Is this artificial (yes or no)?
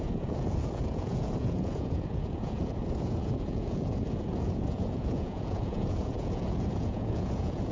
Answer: yes